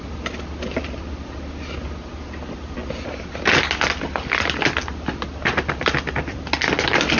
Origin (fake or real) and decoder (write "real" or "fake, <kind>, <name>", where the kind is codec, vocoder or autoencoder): real